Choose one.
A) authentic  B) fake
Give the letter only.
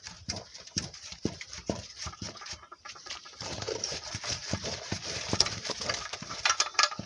B